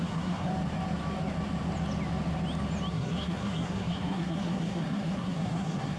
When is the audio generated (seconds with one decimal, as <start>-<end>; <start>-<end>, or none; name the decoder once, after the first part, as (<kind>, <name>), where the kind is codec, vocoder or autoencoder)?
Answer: 0.0-0.5 (codec, SNAC); 2.9-6.0